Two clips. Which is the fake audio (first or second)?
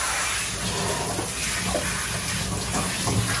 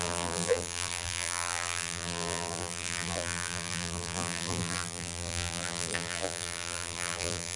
second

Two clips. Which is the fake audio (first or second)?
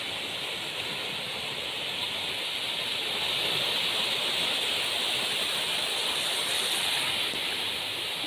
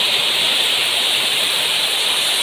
second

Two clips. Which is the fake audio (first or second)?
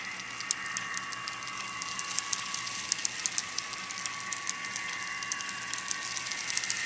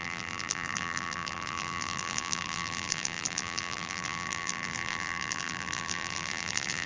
second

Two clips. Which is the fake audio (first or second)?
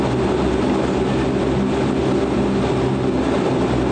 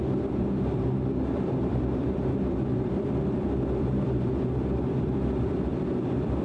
second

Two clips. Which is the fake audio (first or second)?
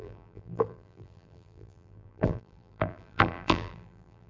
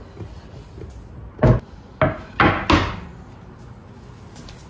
first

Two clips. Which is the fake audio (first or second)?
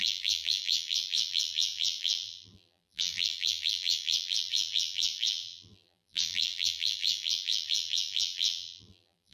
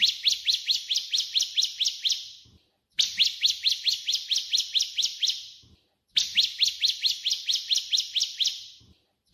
first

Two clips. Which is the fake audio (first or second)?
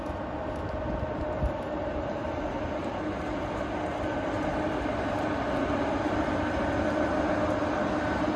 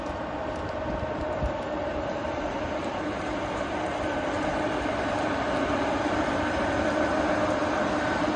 second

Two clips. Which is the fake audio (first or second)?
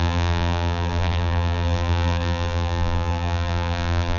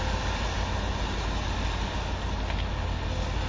first